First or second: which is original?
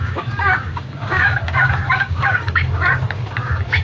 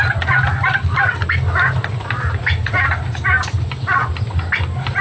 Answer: second